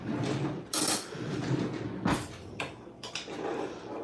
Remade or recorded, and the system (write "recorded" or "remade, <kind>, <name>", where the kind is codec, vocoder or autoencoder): recorded